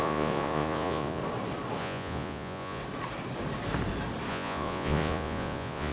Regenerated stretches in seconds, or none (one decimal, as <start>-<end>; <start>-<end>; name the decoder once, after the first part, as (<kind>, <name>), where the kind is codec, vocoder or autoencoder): 0.0-1.2 (vocoder, Vocos); 1.8-2.8; 4.3-5.9